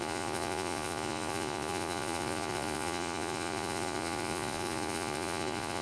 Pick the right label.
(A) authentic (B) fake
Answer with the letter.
B